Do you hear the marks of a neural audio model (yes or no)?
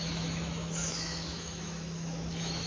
yes